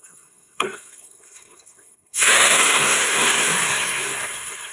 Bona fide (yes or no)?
no